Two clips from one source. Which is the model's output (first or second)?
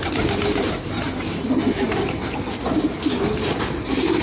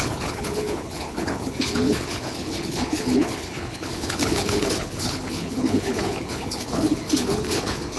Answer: second